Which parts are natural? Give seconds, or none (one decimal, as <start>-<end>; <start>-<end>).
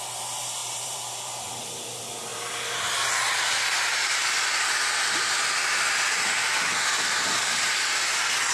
0.0-0.6; 1.3-2.3; 5.9-8.5